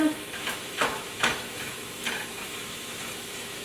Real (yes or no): no